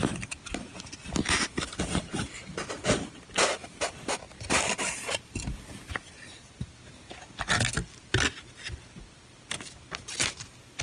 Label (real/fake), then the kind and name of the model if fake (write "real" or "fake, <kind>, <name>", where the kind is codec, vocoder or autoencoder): real